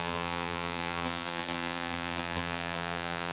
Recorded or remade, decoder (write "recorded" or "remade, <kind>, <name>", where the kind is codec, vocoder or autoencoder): remade, vocoder, BigVGAN v2